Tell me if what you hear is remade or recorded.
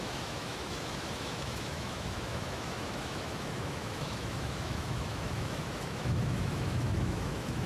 remade